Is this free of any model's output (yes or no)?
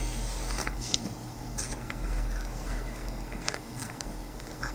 no